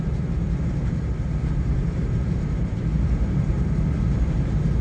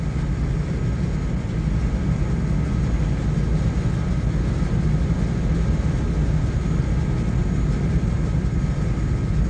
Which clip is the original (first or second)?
second